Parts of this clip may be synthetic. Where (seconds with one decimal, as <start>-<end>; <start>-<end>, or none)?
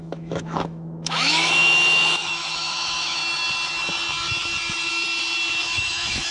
0.0-3.2; 5.6-6.3